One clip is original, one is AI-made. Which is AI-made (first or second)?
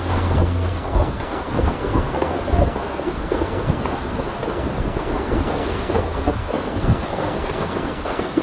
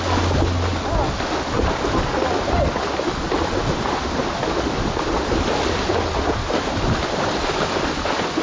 first